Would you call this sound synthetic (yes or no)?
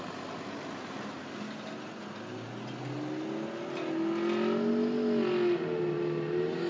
no